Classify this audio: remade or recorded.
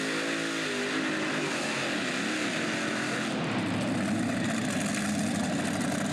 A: recorded